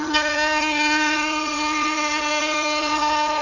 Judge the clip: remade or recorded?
remade